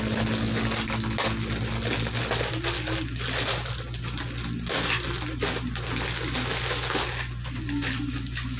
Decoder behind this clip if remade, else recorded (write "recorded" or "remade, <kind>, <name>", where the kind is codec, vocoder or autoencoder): recorded